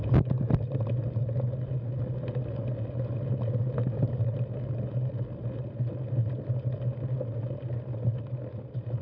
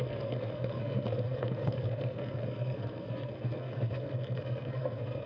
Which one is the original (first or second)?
first